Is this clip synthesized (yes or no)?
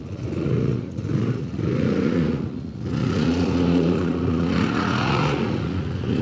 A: yes